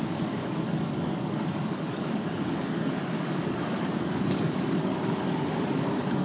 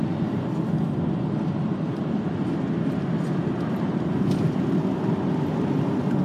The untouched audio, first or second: second